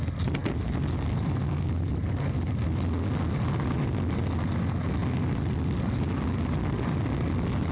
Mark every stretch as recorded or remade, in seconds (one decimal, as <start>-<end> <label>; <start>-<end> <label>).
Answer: 0.0-7.7 recorded